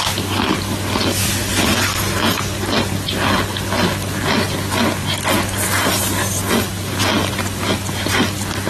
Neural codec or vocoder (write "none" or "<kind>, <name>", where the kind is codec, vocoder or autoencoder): none